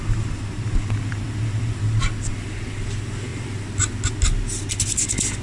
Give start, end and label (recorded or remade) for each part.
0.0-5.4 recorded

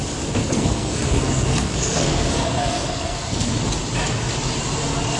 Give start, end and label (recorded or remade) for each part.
0.0-0.4 recorded; 0.4-3.5 remade; 3.5-5.2 recorded

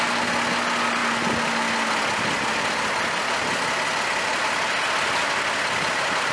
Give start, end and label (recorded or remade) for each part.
0.0-6.3 recorded

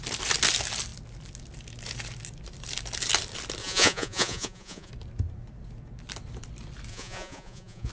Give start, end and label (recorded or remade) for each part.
0.0-3.6 recorded; 3.6-4.9 remade; 4.9-6.9 recorded; 6.9-7.9 remade

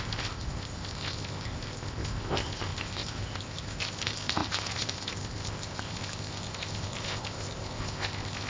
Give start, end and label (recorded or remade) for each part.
0.0-8.5 remade

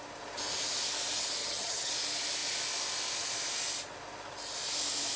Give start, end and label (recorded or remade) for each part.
0.0-1.4 recorded; 1.4-1.9 remade; 1.9-5.2 recorded

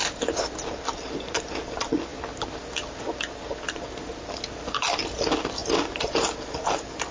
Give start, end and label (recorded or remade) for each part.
0.0-7.1 recorded